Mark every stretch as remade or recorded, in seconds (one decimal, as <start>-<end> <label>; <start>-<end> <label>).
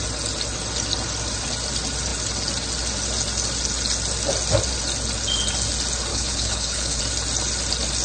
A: 0.0-6.1 recorded; 6.1-7.0 remade; 7.0-8.0 recorded